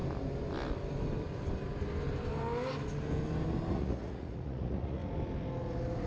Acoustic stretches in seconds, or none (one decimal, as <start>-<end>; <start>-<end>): 0.0-3.7; 5.0-6.1